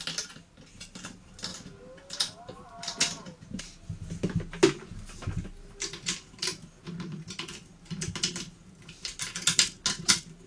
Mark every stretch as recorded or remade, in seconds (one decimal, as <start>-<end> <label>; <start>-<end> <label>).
0.0-10.5 recorded